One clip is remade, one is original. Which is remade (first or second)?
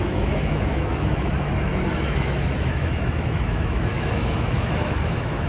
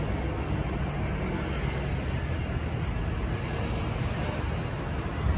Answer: first